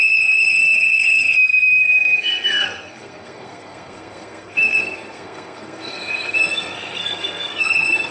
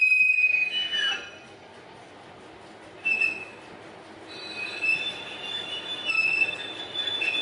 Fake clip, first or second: first